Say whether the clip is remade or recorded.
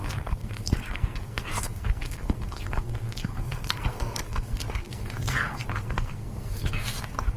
remade